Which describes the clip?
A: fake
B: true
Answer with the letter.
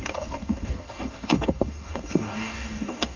A